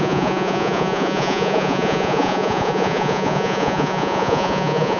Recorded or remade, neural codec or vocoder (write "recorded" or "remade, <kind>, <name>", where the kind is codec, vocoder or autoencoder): remade, vocoder, Vocos